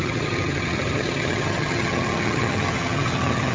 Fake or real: fake